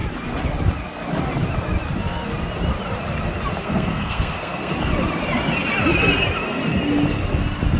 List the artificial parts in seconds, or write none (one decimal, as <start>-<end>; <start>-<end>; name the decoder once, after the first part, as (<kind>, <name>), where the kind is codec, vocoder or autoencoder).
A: 3.6-4.7 (codec, SNAC)